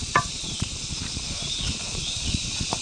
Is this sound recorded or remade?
remade